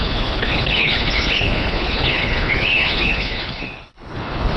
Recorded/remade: remade